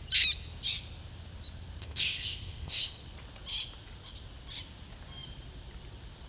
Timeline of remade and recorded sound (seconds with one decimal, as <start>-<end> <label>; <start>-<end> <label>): 0.0-1.8 recorded; 1.8-3.0 remade; 3.0-6.3 recorded